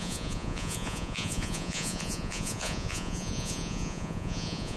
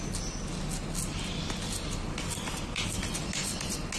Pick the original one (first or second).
second